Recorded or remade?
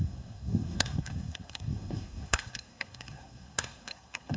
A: remade